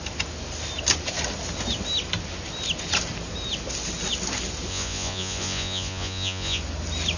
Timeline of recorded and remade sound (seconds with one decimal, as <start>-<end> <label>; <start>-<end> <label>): 0.0-4.7 recorded; 4.7-6.6 remade; 6.6-7.2 recorded